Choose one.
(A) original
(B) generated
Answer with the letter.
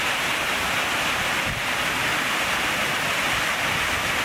A